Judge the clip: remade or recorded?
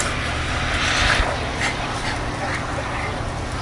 recorded